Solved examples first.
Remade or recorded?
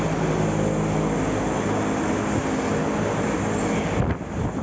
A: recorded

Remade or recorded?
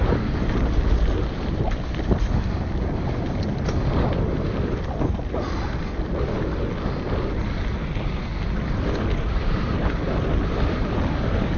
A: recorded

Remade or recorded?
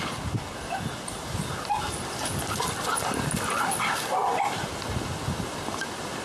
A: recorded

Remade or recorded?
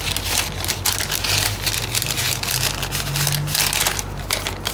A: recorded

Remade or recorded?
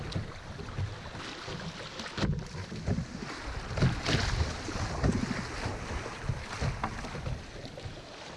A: recorded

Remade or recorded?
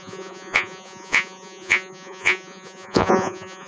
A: remade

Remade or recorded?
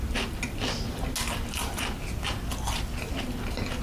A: recorded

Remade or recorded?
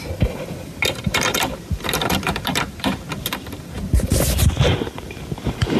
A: recorded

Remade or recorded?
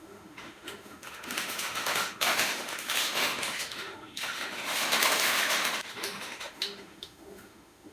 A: remade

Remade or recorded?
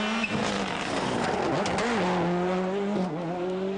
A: recorded